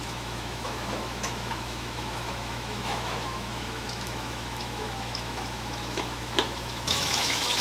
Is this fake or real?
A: fake